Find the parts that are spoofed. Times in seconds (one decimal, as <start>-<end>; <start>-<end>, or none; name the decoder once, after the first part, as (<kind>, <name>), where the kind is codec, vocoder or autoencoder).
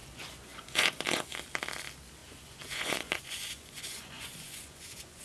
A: 0.0-1.3 (vocoder, Vocos); 2.2-5.2